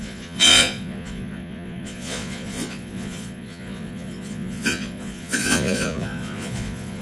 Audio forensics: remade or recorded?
remade